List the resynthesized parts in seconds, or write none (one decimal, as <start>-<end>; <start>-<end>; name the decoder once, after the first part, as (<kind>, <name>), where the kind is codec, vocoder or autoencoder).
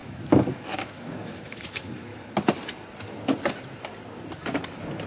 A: 0.0-2.1 (autoencoder, DAC-VAE)